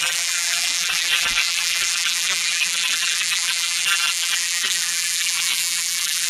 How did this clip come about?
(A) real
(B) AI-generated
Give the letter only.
B